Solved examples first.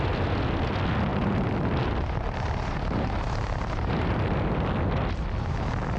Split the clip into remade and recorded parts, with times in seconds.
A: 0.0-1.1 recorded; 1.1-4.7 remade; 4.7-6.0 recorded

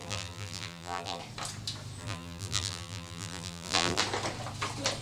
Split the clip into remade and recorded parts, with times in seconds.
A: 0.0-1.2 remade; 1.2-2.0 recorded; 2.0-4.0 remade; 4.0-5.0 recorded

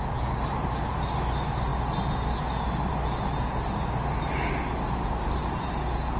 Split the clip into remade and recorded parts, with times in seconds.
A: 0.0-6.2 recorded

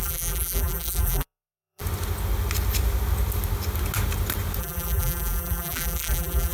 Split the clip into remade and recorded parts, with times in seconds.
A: 0.0-1.8 remade; 1.8-4.6 recorded; 4.6-6.5 remade